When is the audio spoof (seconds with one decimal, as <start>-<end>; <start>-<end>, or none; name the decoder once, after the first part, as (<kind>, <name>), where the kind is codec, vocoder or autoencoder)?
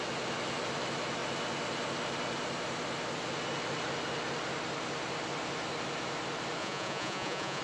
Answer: 6.6-7.6 (vocoder, Vocos)